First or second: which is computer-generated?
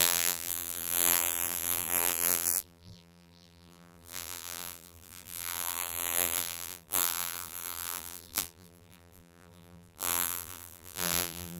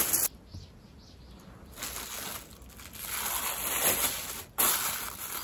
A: first